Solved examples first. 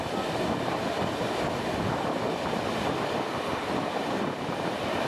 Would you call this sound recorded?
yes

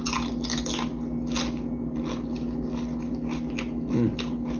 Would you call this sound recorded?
yes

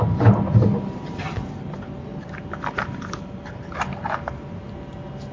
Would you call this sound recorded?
yes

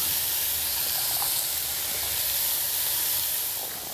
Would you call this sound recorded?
no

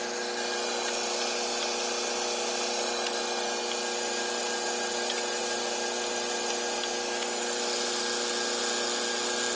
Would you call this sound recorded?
yes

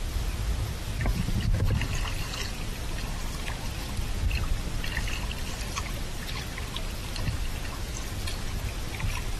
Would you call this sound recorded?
no